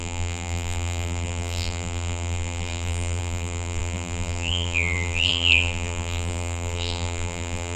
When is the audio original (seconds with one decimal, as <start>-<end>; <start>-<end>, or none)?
none